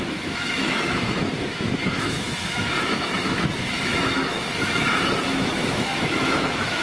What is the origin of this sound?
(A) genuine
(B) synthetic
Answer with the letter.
B